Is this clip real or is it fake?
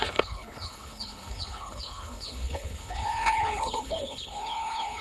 fake